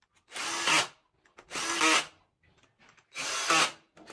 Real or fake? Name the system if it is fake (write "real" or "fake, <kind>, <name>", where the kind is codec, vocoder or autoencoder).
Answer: real